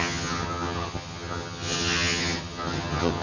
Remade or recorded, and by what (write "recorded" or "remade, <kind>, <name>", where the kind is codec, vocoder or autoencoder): remade, vocoder, HiFi-GAN